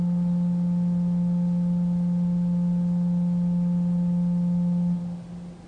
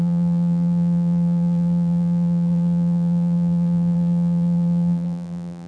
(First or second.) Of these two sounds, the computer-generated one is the second